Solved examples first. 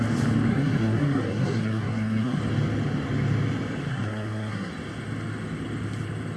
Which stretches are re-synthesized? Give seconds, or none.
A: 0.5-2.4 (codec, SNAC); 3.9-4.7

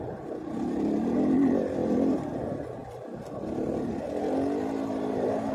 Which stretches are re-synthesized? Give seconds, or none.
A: 1.8-2.4 (vocoder, BigVGAN v2); 2.8-4.0

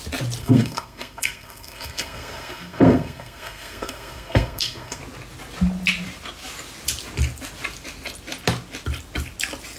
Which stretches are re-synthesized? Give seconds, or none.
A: 0.4-5.0 (codec, SNAC)

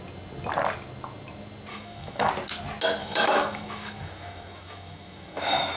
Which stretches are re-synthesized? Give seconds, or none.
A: 1.7-2.3 (autoencoder, DAC-VAE); 3.0-5.8

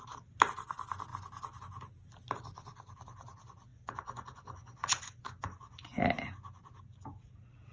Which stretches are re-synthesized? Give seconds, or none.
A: 3.7-6.0 (vocoder, Vocos)

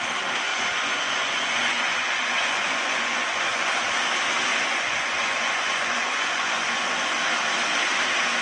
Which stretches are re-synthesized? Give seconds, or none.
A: 0.5-3.8 (vocoder, Vocos); 4.5-7.3